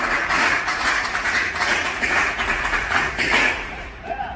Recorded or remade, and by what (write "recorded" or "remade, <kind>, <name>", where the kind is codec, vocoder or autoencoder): remade, vocoder, Vocos